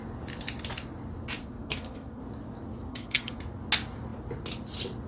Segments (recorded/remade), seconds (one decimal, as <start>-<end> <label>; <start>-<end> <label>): 0.0-1.4 recorded; 1.4-2.2 remade; 2.2-2.9 recorded; 2.9-3.4 remade; 3.4-5.1 recorded

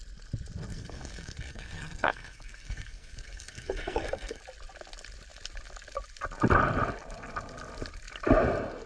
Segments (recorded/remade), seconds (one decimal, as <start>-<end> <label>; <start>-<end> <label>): 0.0-0.7 recorded; 0.7-4.4 remade; 4.4-8.9 recorded